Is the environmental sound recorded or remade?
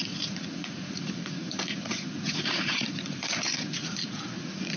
remade